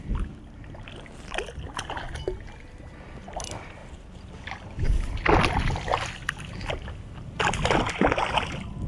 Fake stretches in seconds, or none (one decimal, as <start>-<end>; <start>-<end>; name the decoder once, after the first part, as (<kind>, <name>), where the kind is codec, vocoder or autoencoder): none